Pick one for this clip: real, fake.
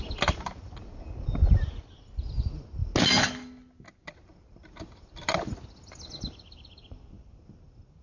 real